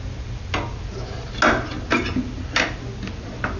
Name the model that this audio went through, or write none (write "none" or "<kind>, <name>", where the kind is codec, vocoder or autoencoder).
none